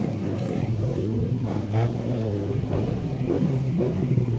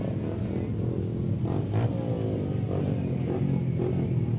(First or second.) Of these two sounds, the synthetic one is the first